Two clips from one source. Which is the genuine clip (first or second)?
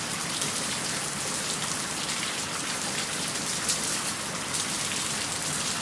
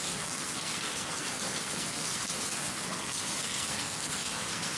first